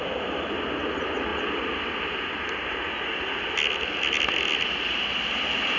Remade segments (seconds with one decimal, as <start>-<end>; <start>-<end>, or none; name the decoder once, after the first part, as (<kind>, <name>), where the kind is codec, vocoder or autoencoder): none